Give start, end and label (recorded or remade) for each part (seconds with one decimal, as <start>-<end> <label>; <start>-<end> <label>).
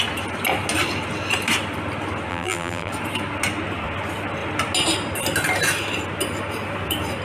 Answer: 0.0-2.3 recorded; 2.3-2.9 remade; 2.9-7.2 recorded